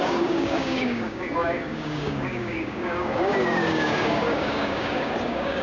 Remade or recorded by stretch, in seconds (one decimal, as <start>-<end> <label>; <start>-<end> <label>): 0.0-5.6 remade